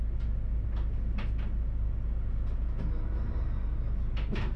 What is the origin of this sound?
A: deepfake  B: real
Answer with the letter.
B